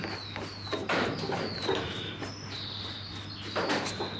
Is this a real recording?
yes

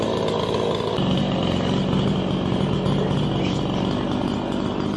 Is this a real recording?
yes